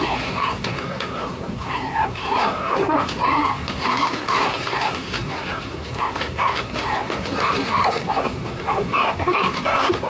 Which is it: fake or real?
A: fake